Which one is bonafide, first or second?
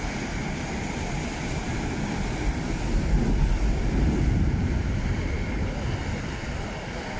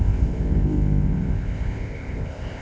first